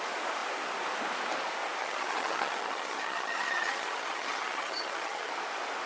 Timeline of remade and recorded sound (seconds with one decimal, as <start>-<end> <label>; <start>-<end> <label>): 0.0-1.8 recorded; 1.8-5.3 remade; 5.3-5.9 recorded